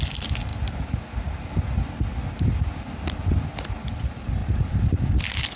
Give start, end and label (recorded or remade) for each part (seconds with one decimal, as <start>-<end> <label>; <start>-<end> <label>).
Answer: 0.0-5.6 recorded